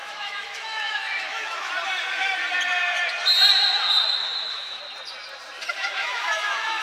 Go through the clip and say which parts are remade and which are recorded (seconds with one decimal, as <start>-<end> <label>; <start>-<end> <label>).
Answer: 0.0-1.7 remade; 1.7-4.2 recorded; 4.2-4.8 remade; 4.8-6.0 recorded; 6.0-6.8 remade